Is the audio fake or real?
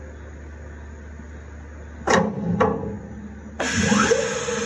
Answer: real